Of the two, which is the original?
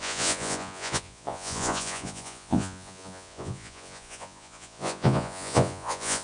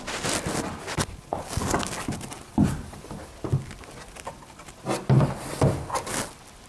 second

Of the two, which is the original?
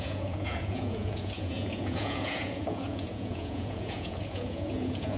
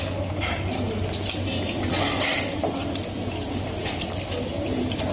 second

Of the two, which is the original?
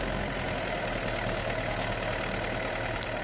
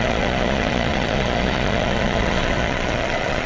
first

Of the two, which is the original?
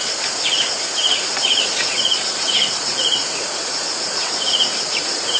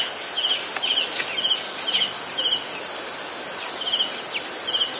second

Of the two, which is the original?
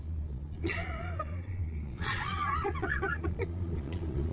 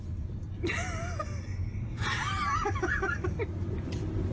second